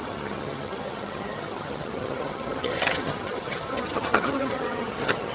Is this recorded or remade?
remade